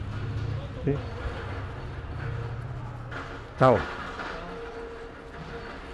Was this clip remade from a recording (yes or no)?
no